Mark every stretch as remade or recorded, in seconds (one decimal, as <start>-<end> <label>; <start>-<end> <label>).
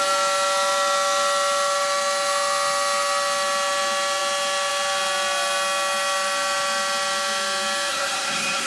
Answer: 0.0-7.9 recorded; 7.9-8.7 remade